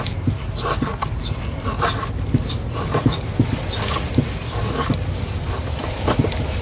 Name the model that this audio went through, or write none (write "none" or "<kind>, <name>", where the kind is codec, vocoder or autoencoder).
none